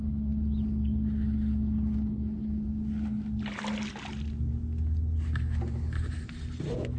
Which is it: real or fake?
real